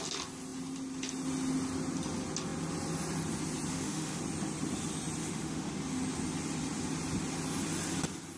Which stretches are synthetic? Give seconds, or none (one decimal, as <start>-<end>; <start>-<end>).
3.7-4.2; 5.2-5.7